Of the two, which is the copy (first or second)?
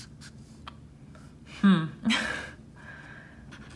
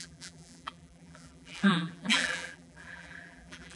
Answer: second